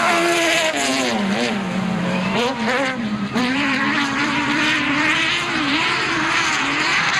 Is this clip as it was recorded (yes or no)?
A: no